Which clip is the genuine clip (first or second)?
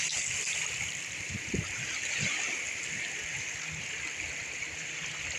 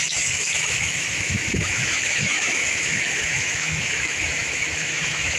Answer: first